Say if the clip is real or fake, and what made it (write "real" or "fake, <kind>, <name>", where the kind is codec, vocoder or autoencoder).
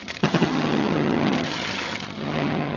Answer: fake, vocoder, HiFi-GAN